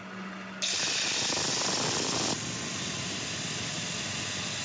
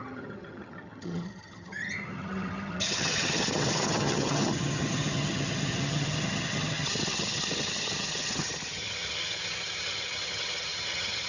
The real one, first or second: first